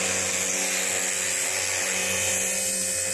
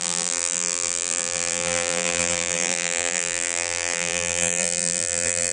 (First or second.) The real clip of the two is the first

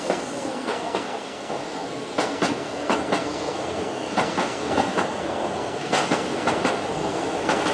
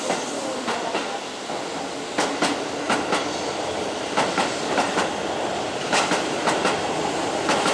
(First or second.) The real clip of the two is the second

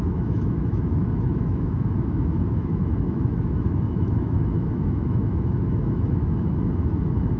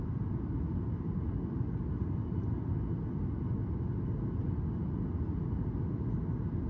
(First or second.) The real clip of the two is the second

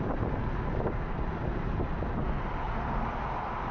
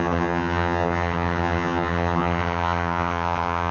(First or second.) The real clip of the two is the first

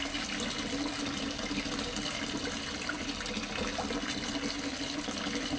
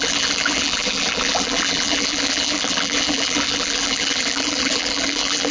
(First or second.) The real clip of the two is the first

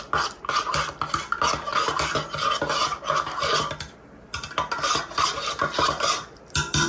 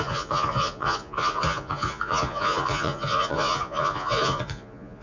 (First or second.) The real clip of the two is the first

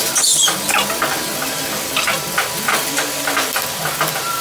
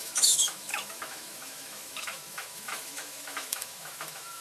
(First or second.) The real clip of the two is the first